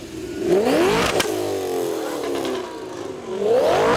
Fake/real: real